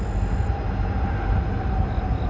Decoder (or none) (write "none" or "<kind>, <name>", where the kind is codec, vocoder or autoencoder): none